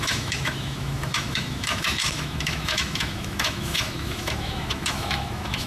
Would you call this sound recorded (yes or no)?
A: no